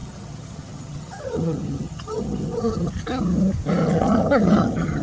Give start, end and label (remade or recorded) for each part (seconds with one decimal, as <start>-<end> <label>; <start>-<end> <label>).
0.0-2.9 remade; 2.9-3.8 recorded; 3.8-5.0 remade